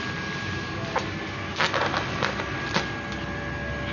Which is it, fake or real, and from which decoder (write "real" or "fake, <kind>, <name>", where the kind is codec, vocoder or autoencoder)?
real